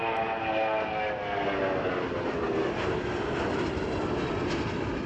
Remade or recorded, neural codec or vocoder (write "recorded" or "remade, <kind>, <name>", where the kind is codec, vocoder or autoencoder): recorded